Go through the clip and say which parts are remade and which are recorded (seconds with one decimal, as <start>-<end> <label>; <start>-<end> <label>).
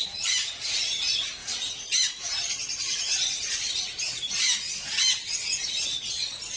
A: 0.0-1.4 recorded; 1.4-5.4 remade; 5.4-6.6 recorded